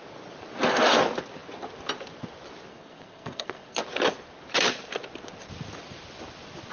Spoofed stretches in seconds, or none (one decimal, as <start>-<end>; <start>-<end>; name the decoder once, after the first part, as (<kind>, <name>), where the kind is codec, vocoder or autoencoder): 2.7-3.8 (codec, SNAC)